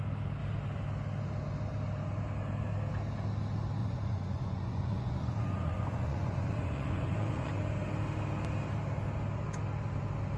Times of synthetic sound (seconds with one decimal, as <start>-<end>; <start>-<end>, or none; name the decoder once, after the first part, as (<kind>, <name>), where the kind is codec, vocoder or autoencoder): 3.8-7.5 (vocoder, Vocos)